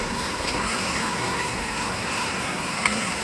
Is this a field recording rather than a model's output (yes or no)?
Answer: no